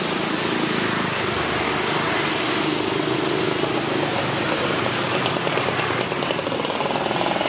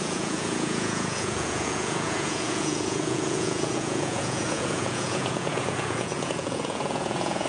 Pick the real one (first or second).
first